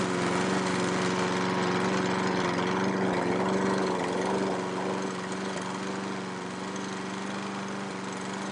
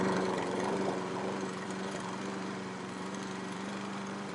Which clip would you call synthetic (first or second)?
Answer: second